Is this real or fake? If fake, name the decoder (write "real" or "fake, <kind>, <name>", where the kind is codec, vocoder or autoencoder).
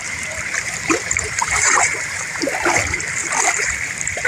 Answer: fake, vocoder, BigVGAN v2